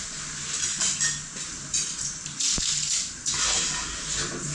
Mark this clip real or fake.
real